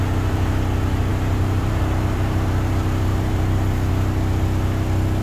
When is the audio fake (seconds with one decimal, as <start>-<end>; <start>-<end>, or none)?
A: 1.1-3.9